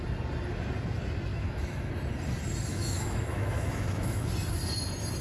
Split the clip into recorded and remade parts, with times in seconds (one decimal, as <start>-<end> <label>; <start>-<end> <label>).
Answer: 0.0-1.3 recorded; 1.3-1.9 remade; 1.9-2.7 recorded; 2.7-4.3 remade; 4.3-5.2 recorded